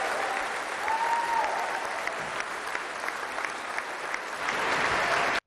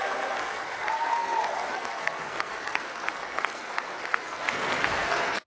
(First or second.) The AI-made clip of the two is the second